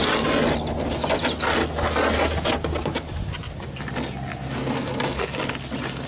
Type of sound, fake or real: real